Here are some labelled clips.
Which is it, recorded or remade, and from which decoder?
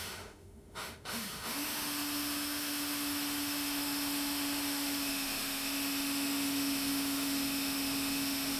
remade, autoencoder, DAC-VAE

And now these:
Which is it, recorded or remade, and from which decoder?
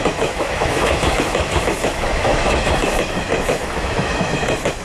remade, autoencoder, DAC-VAE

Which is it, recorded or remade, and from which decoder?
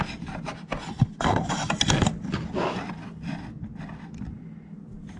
recorded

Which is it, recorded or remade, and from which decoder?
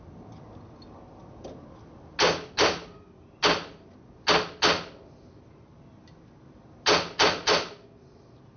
recorded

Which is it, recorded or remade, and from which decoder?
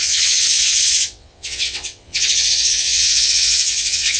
remade, vocoder, WaveNeXt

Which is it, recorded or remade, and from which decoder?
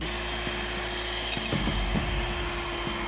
recorded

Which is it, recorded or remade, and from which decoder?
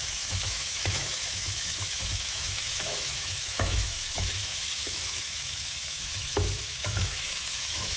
remade, autoencoder, DAC-VAE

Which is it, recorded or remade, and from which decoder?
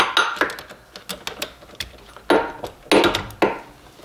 recorded